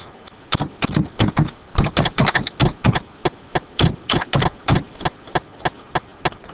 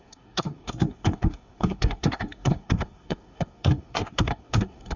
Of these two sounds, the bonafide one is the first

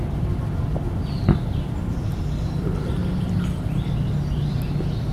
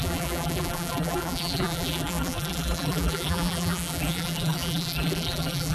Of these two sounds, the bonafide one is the first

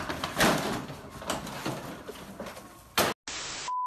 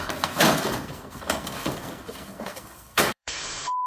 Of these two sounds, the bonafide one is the first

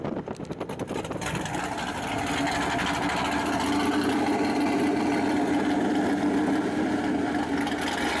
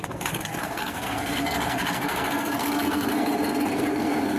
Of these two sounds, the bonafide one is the first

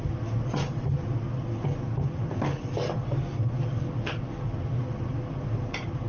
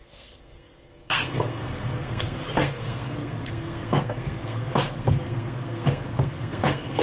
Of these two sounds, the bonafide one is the first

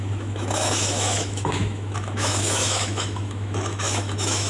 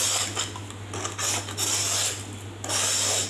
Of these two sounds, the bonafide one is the second